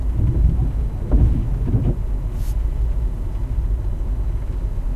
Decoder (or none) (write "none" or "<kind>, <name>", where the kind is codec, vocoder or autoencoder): none